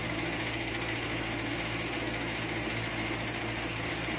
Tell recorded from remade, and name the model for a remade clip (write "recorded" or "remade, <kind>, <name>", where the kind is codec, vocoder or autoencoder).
recorded